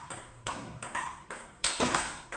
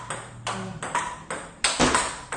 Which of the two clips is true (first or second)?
second